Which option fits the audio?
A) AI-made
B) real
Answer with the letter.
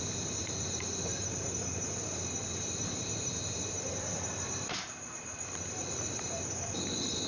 A